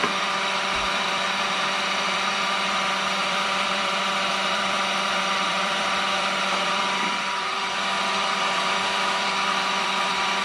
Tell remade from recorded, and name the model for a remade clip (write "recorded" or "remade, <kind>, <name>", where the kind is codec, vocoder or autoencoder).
remade, vocoder, BigVGAN v2